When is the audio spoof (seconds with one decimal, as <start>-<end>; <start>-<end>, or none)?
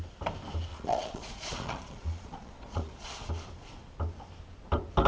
0.7-3.3